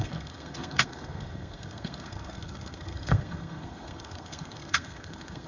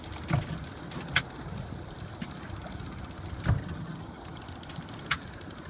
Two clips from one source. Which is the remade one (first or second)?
first